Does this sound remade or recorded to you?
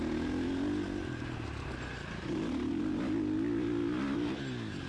recorded